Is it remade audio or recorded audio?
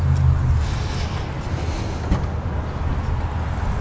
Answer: recorded